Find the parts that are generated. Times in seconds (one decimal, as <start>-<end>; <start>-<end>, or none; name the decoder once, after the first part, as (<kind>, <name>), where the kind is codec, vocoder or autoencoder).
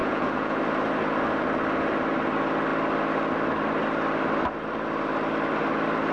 0.0-0.6 (vocoder, Vocos)